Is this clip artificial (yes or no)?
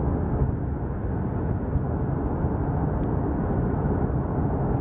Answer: no